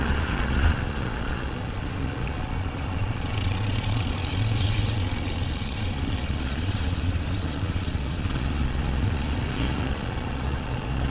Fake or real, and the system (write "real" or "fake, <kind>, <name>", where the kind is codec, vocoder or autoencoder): fake, vocoder, Vocos